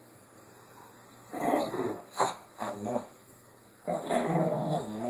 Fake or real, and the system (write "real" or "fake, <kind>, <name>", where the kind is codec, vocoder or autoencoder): fake, codec, SNAC